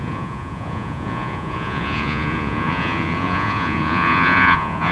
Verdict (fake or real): fake